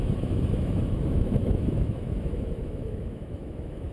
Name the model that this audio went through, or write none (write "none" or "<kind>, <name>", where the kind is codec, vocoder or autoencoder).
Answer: autoencoder, DAC-VAE